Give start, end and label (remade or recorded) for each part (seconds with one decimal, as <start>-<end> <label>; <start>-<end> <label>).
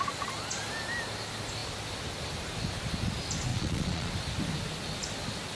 0.0-3.5 recorded; 3.5-4.1 remade; 4.1-5.5 recorded